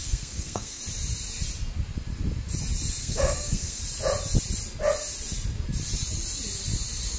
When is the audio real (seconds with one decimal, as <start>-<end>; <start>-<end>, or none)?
0.8-3.0; 3.8-7.2